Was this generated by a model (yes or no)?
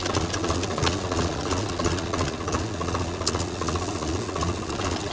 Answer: yes